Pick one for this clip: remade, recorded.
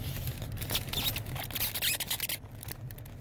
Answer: recorded